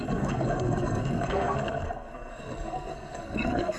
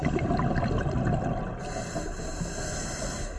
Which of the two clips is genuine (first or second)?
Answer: second